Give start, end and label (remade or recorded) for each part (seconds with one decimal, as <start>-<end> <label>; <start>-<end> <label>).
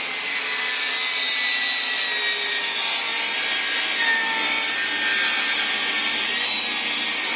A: 0.0-5.1 recorded; 5.1-5.7 remade; 5.7-7.4 recorded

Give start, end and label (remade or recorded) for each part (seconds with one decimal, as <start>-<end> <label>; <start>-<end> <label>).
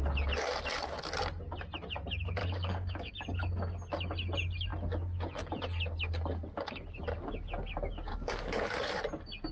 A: 0.0-2.4 recorded; 2.4-3.1 remade; 3.1-8.1 recorded; 8.1-9.0 remade; 9.0-9.5 recorded